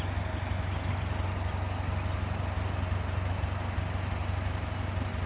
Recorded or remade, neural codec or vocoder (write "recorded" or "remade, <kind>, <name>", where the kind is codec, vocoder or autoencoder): recorded